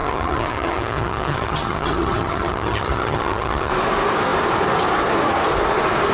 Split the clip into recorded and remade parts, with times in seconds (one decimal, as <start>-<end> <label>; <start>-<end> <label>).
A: 0.0-3.7 remade; 3.7-6.1 recorded